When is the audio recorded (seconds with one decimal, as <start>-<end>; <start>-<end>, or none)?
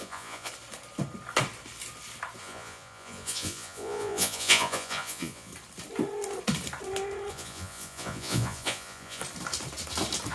0.5-2.4; 5.5-7.3; 9.2-10.3